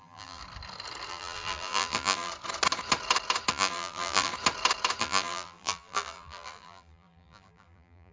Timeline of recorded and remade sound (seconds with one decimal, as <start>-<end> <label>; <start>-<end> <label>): 0.0-0.4 remade; 0.4-1.1 recorded; 1.1-2.3 remade; 2.3-3.5 recorded; 3.5-4.3 remade; 4.3-5.0 recorded; 5.0-8.1 remade